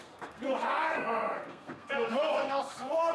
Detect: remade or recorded remade